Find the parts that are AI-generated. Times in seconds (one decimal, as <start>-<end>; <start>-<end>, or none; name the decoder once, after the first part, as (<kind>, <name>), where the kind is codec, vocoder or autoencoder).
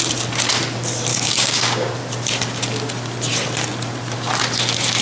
1.1-1.9 (codec, DAC)